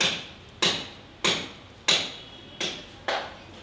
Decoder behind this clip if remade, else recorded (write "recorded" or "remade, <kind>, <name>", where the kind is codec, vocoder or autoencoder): recorded